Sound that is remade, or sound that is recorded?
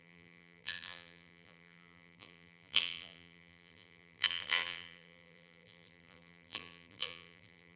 remade